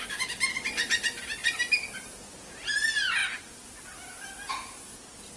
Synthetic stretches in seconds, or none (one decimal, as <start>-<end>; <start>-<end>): none